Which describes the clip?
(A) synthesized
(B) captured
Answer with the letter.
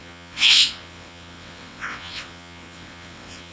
A